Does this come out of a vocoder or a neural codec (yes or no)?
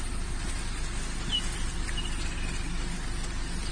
no